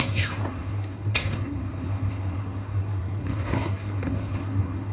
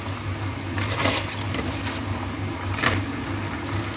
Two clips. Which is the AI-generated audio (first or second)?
first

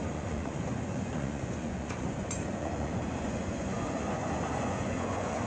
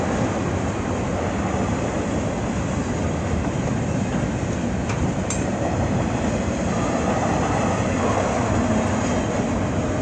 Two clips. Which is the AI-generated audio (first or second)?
first